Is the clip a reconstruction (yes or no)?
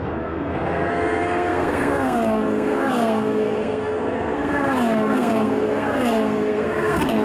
yes